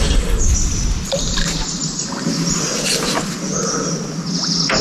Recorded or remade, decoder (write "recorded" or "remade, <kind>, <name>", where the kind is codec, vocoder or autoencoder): recorded